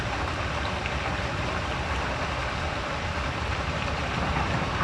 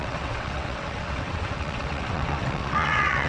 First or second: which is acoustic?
first